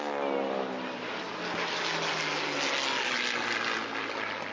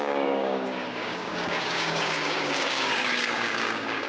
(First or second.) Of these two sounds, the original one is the first